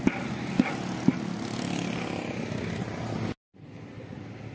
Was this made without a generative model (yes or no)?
yes